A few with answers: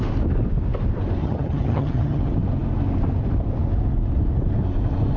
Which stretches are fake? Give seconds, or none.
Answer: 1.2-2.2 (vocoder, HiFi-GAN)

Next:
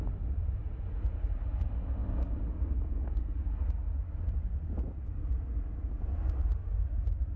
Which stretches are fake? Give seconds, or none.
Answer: none